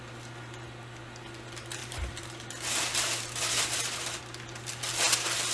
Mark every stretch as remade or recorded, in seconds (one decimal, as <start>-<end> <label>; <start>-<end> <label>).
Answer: 0.0-1.8 recorded; 1.8-4.2 remade; 4.2-5.5 recorded